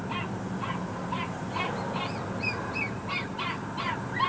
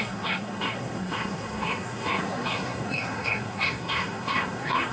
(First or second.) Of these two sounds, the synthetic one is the second